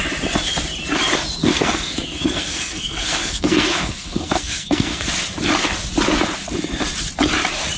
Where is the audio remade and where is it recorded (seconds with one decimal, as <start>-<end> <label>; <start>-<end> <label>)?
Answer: 0.0-1.4 recorded; 1.4-5.1 remade; 5.1-7.8 recorded